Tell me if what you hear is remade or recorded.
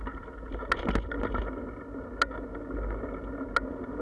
recorded